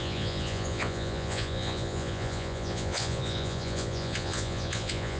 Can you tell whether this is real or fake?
fake